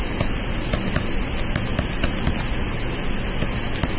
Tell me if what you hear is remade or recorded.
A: recorded